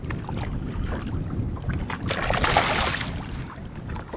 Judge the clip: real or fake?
real